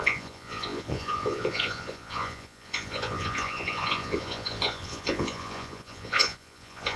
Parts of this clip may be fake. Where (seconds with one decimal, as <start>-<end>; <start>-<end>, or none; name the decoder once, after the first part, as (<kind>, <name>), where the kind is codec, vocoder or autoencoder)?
0.0-7.0 (vocoder, Vocos)